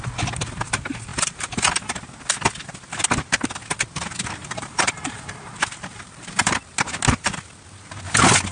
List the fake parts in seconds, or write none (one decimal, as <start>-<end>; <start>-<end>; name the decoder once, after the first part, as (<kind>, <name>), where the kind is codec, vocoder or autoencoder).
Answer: 1.1-1.7 (vocoder, BigVGAN v2); 4.4-6.5